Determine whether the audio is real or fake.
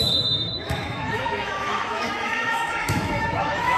fake